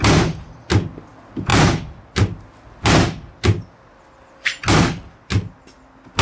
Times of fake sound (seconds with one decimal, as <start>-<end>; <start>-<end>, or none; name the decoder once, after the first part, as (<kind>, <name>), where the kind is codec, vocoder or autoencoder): none